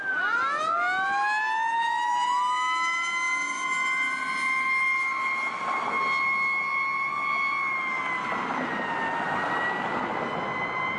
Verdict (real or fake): real